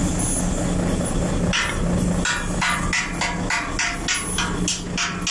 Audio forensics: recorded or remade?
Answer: recorded